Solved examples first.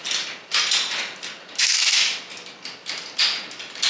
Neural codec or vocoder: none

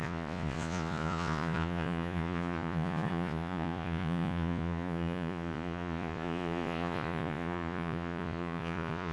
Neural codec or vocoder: vocoder, Vocos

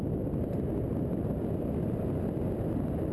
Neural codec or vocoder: none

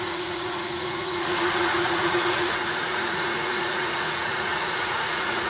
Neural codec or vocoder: vocoder, Vocos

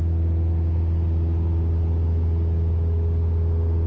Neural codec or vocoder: none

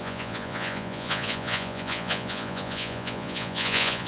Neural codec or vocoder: vocoder, Vocos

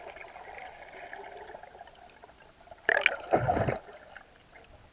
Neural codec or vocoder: none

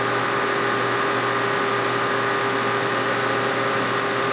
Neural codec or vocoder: none